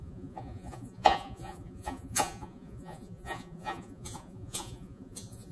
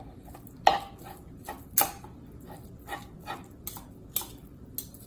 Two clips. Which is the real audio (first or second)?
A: second